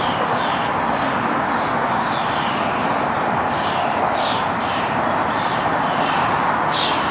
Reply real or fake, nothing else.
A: real